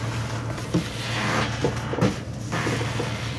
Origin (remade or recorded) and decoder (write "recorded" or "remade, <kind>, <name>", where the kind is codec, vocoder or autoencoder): recorded